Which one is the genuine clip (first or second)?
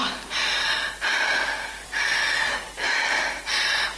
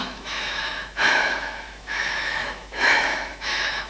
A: first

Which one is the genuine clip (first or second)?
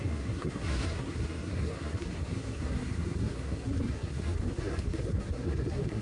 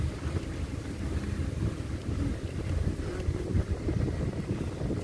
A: second